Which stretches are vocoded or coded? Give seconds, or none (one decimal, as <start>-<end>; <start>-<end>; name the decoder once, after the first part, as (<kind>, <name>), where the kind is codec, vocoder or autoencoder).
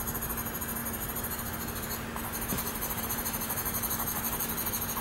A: 0.8-3.0 (vocoder, BigVGAN v2)